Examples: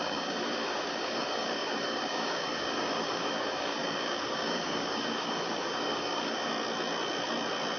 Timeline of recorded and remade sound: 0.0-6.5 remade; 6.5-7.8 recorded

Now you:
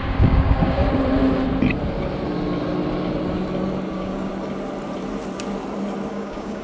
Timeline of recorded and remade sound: 0.0-0.8 remade; 0.8-3.9 recorded; 3.9-4.3 remade; 4.3-6.1 recorded; 6.1-6.6 remade

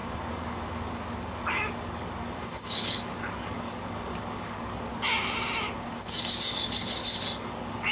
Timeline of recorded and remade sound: 0.0-4.9 remade; 4.9-5.7 recorded; 5.7-7.9 remade